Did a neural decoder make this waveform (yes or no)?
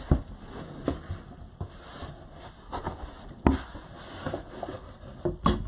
no